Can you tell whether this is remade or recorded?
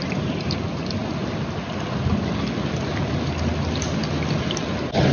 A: recorded